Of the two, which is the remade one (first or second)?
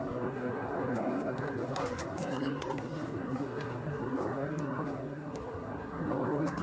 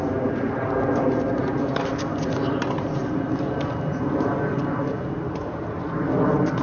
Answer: first